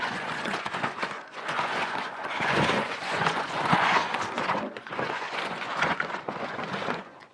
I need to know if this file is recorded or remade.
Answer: remade